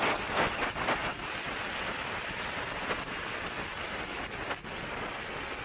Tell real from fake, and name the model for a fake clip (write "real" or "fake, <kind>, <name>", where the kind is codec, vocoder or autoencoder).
real